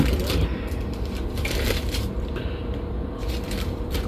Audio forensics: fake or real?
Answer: fake